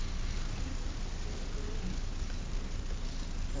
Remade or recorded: recorded